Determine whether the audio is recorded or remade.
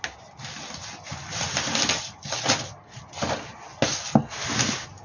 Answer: recorded